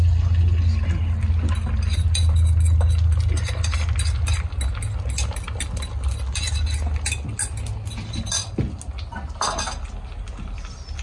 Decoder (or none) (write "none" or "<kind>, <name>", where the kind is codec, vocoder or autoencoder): none